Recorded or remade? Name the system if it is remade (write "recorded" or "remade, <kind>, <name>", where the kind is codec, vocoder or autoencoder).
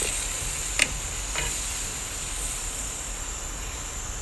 recorded